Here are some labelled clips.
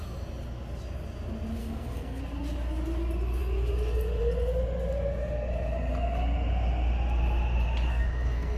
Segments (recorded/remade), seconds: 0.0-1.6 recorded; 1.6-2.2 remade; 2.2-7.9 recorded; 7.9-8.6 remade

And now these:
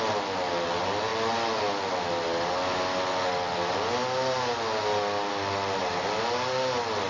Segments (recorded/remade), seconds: 0.0-7.1 recorded

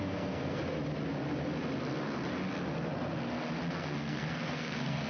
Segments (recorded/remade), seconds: 0.0-0.6 remade; 0.6-3.7 recorded; 3.7-5.1 remade

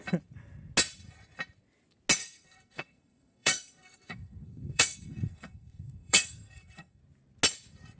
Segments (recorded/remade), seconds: 0.0-2.2 recorded; 2.2-7.0 remade; 7.0-8.0 recorded

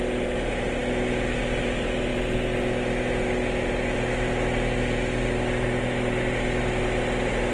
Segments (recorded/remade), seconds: 0.0-7.5 recorded

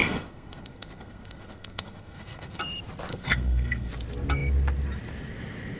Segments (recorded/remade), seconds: 0.0-2.6 remade; 2.6-3.1 recorded; 3.1-3.9 remade; 3.9-5.8 recorded

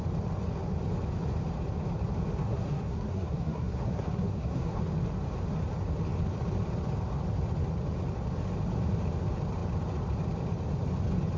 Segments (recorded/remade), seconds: 0.0-2.4 recorded; 2.4-4.8 remade; 4.8-11.4 recorded

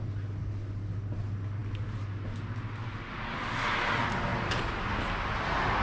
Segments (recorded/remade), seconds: 0.0-5.8 recorded